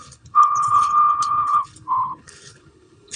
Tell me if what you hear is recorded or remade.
remade